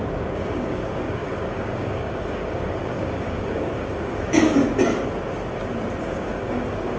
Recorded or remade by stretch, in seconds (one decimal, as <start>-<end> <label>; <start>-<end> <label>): 0.0-4.6 remade; 4.6-6.0 recorded; 6.0-7.0 remade